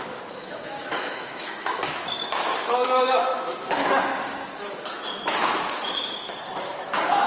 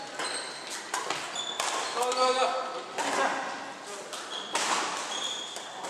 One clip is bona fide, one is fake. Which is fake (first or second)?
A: first